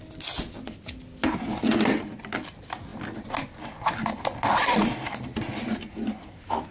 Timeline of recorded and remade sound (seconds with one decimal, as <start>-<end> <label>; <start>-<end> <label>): 0.0-6.7 recorded